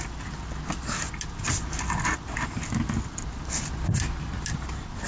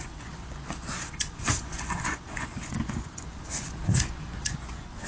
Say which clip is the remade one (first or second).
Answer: second